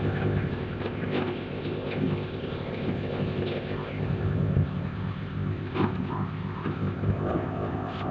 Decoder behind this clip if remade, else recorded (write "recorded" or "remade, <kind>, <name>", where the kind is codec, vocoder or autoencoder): remade, codec, ZipCodec